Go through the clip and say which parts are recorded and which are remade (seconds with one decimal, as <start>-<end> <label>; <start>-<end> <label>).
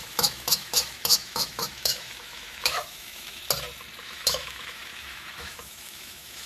0.0-3.4 remade; 3.4-4.0 recorded; 4.0-6.5 remade